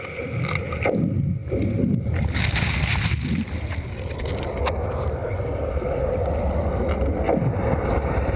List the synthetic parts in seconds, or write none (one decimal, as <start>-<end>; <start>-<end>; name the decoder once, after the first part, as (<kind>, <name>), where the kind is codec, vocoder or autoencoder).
none